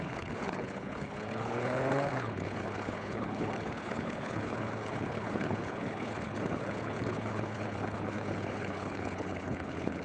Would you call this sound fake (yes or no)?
yes